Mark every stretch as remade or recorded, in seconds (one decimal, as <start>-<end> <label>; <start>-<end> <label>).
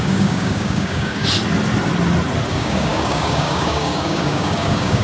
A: 0.0-1.2 remade; 1.2-2.5 recorded; 2.5-5.0 remade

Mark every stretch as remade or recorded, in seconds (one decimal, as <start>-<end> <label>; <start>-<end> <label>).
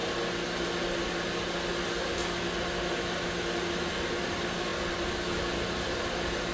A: 0.0-6.5 recorded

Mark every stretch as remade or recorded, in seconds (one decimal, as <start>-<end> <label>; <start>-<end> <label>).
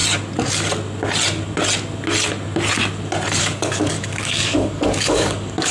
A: 0.0-3.4 recorded; 3.4-5.7 remade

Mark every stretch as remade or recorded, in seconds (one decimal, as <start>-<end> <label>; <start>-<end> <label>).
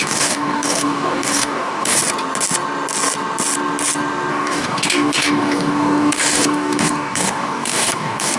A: 0.0-2.0 remade; 2.0-4.3 recorded; 4.3-8.4 remade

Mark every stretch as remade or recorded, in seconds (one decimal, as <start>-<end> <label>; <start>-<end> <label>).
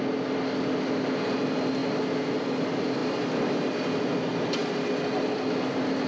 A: 0.0-6.1 recorded